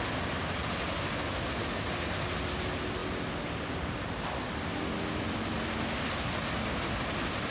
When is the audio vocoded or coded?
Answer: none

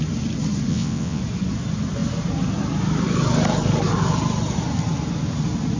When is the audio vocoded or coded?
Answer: 0.7-1.2 (vocoder, WaveNeXt)

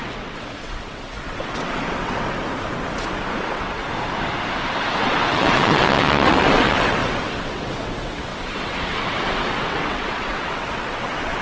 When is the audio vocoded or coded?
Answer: 0.0-2.4 (vocoder, WaveNeXt); 3.4-3.8; 5.0-11.4

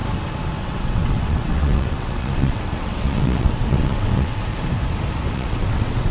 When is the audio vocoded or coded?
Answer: 0.6-4.5 (vocoder, WaveNeXt); 5.3-6.1

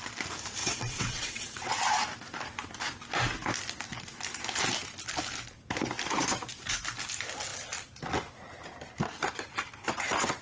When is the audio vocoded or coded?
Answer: 0.6-1.7 (vocoder, WaveNeXt)

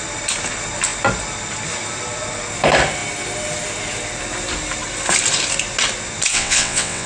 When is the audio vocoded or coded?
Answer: 6.3-7.1 (vocoder, WaveNeXt)

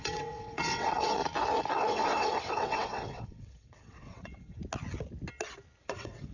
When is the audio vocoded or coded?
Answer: 0.0-1.2 (vocoder, WaveNeXt); 1.7-4.6; 5.8-6.3